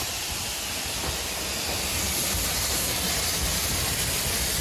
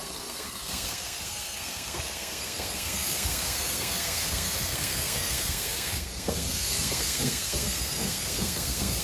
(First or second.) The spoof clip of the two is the second